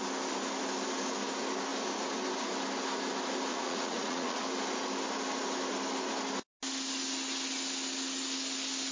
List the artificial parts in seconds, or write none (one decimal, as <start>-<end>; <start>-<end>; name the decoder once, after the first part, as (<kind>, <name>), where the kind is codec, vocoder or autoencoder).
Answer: 3.5-4.4 (vocoder, Vocos)

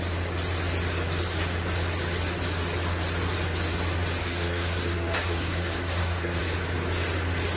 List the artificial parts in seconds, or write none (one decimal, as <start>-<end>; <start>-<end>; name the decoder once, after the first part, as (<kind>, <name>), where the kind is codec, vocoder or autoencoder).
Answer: 4.2-6.4 (codec, SNAC)

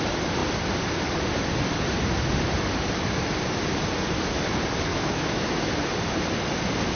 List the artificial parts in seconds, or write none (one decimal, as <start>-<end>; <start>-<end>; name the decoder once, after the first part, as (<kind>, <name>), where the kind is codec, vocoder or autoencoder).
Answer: 4.9-5.7 (autoencoder, DAC-VAE)

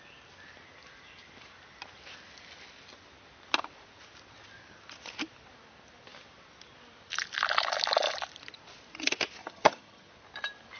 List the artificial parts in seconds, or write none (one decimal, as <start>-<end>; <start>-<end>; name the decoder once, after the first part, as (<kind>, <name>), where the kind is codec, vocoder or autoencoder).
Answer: 9.4-10.1 (vocoder, HiFi-GAN)

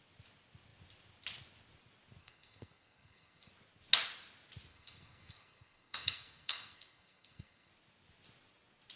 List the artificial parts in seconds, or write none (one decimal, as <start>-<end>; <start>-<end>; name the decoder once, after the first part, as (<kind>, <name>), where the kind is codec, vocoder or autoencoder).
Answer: 2.2-3.5 (codec, SNAC); 4.7-7.7